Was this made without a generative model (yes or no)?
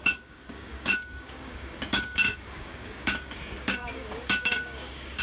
no